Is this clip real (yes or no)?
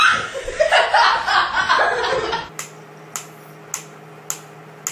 yes